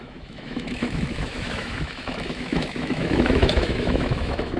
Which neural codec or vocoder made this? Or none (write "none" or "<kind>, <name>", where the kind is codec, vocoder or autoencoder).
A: autoencoder, DAC-VAE